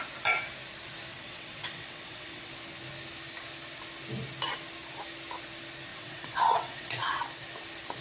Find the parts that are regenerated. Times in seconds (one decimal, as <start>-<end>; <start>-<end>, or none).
1.1-2.5; 5.9-7.2